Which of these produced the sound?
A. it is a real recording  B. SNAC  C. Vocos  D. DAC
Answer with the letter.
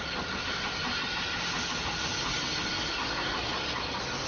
A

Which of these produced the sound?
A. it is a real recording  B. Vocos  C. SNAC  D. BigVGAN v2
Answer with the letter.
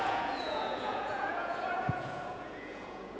B